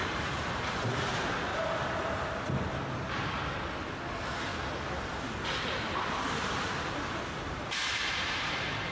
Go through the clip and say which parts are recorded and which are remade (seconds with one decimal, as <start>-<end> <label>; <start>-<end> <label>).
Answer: 0.0-1.5 remade; 1.5-4.1 recorded; 4.1-4.5 remade; 4.5-7.5 recorded; 7.5-8.9 remade